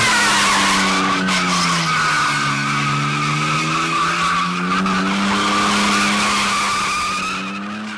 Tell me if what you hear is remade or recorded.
recorded